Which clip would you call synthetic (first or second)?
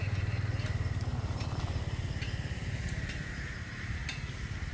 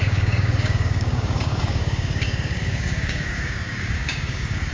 second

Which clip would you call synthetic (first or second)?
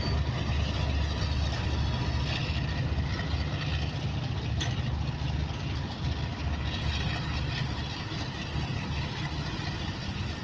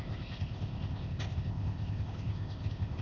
second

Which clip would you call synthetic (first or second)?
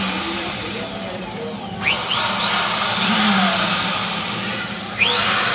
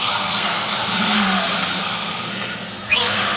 second